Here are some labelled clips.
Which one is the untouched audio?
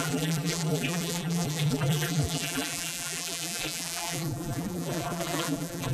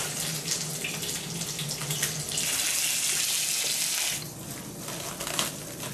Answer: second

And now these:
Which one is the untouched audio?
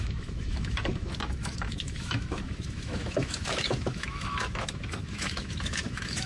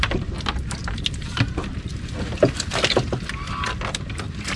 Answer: second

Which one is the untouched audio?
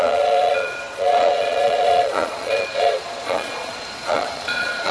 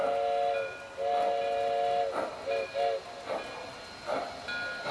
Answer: second